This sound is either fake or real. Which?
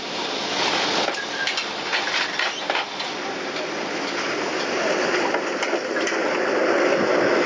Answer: real